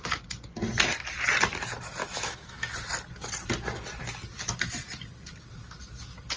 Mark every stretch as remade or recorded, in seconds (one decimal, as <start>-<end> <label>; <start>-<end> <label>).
0.0-2.0 recorded; 2.0-2.7 remade; 2.7-6.4 recorded